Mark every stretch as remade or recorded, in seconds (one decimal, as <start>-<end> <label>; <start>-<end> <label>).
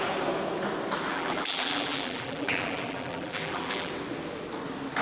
0.0-1.1 recorded; 1.1-3.9 remade; 3.9-5.0 recorded